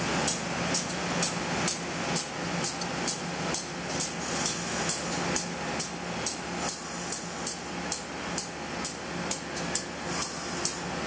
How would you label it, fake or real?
real